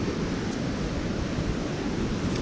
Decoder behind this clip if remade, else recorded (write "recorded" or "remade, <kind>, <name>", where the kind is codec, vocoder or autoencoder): recorded